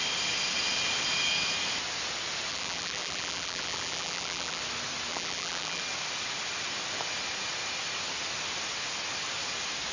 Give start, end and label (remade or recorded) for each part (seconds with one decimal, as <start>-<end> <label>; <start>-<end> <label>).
0.0-2.5 recorded; 2.5-4.6 remade; 4.6-5.1 recorded; 5.1-5.8 remade; 5.8-9.9 recorded